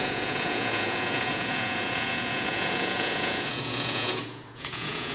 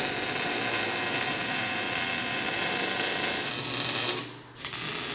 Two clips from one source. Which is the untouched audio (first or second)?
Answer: second